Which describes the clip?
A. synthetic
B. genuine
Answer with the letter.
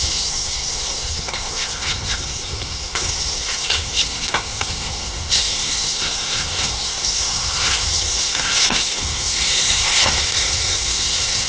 A